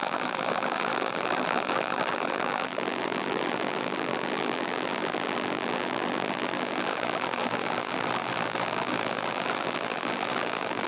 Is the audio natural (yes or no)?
no